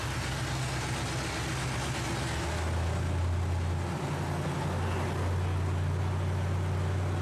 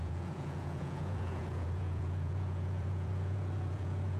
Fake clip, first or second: second